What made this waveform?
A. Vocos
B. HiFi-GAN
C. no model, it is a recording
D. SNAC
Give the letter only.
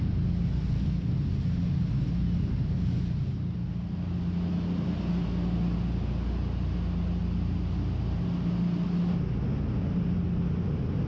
C